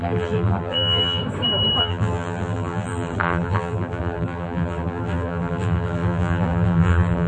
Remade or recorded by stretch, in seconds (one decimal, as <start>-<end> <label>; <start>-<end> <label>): 0.0-1.2 remade; 1.2-1.8 recorded; 1.8-7.3 remade